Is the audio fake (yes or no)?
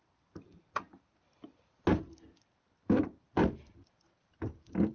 no